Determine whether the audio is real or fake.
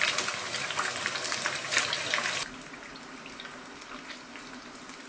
real